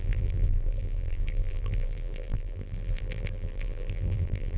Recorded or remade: remade